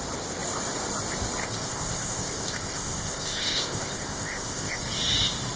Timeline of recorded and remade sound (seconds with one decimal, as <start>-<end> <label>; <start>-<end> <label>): 0.0-1.4 recorded; 1.4-4.8 remade; 4.8-5.6 recorded